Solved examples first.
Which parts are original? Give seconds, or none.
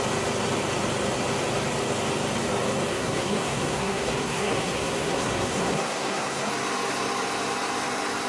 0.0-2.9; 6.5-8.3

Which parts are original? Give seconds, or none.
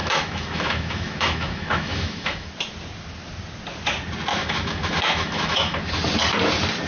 2.5-4.3; 5.8-6.9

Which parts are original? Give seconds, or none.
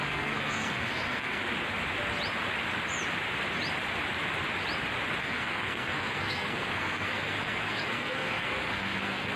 1.4-5.2